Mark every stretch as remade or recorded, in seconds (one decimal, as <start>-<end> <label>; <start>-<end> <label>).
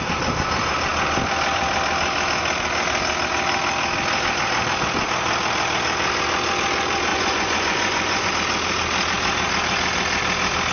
0.0-7.1 recorded; 7.1-8.3 remade; 8.3-10.7 recorded